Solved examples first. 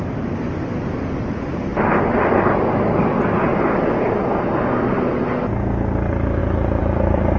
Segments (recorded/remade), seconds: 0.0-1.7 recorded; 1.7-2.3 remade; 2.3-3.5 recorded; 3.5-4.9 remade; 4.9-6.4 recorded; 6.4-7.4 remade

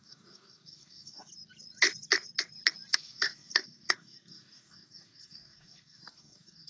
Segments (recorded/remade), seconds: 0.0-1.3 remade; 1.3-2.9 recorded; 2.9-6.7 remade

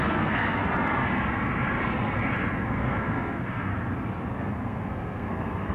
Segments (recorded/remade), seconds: 0.0-0.6 remade; 0.6-2.7 recorded; 2.7-3.7 remade; 3.7-4.4 recorded; 4.4-5.7 remade

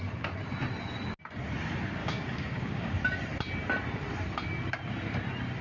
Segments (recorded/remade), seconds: 0.0-2.0 recorded; 2.0-3.0 remade; 3.0-5.6 recorded